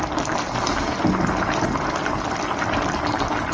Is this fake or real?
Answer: real